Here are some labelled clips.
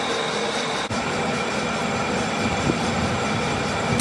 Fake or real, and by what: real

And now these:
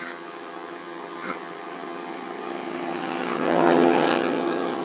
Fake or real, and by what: fake, vocoder, HiFi-GAN